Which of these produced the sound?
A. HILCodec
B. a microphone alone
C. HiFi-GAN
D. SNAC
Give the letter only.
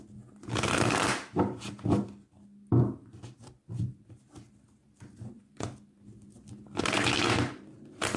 B